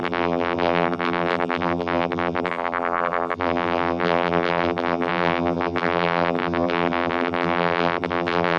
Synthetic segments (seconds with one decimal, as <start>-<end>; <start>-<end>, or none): 0.0-8.6